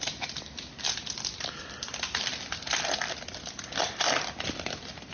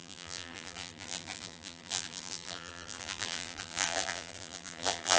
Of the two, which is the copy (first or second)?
second